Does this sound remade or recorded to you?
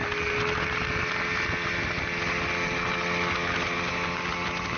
recorded